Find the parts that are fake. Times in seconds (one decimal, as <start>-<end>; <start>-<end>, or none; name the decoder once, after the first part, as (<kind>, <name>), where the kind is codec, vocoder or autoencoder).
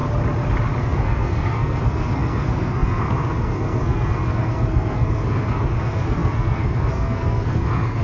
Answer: 0.8-8.0 (codec, SNAC)